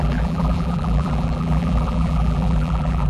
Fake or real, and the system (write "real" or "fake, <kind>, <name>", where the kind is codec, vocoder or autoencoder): fake, vocoder, BigVGAN v2